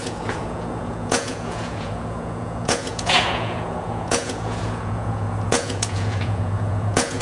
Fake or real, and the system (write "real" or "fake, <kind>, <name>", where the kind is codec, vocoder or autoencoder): fake, vocoder, Vocos